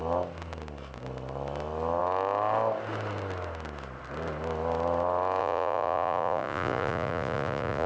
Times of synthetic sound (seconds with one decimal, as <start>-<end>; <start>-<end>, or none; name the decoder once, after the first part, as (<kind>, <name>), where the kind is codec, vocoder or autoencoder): 5.4-7.9 (vocoder, Vocos)